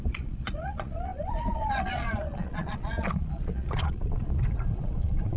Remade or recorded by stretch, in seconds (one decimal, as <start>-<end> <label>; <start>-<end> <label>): 0.0-5.4 remade